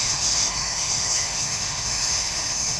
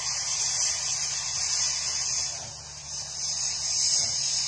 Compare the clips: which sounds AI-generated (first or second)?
first